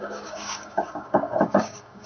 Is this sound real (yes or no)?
no